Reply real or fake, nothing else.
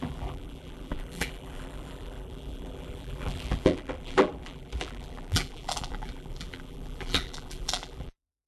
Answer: fake